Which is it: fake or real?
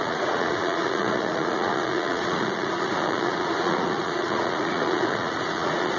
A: fake